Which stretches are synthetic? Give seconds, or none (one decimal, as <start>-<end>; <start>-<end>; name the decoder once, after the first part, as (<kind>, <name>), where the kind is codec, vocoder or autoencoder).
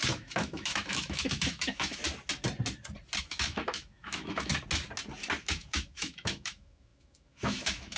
0.0-2.0 (autoencoder, DAC-VAE); 3.2-4.5; 5.4-8.0